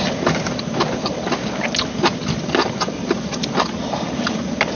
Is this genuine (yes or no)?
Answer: yes